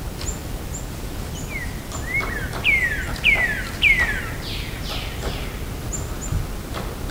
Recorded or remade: recorded